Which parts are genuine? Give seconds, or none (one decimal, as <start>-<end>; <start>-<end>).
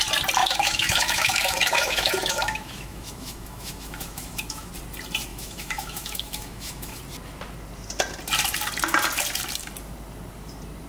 0.0-0.4; 4.7-5.3; 7.0-10.9